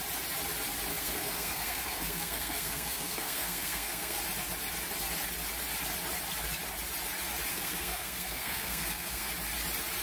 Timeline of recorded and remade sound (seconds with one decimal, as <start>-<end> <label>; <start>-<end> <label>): 0.0-0.9 recorded; 0.9-4.2 remade; 4.2-7.5 recorded; 7.5-9.3 remade; 9.3-10.0 recorded